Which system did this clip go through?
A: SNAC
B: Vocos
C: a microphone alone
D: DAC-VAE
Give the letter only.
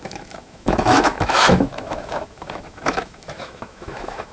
D